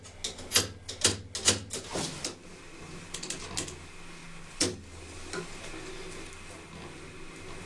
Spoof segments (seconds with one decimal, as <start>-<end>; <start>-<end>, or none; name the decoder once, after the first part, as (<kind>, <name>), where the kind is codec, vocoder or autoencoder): none